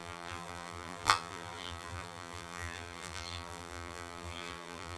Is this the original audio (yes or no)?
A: no